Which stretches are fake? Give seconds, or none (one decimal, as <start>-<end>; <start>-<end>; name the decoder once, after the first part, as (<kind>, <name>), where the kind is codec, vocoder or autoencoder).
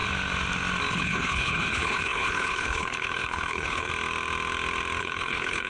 0.9-3.9 (codec, HILCodec); 5.0-5.7